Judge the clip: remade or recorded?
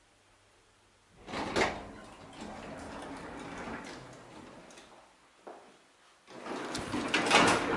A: recorded